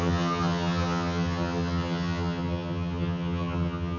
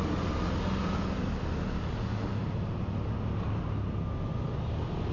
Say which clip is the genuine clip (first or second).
second